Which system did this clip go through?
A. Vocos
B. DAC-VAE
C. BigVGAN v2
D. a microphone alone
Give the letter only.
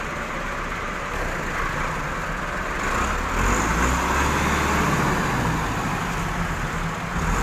D